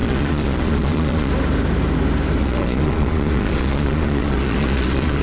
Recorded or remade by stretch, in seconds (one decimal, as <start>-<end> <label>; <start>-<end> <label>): 0.0-1.3 remade; 1.3-2.4 recorded; 2.4-5.2 remade